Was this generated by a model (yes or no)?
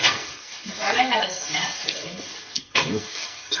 yes